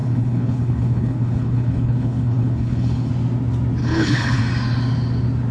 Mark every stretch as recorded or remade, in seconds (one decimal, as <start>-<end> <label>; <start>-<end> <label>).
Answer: 0.0-3.1 remade; 3.1-3.8 recorded; 3.8-4.4 remade; 4.4-5.5 recorded